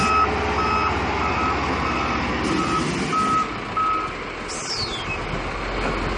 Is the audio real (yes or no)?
yes